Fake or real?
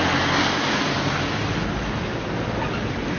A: real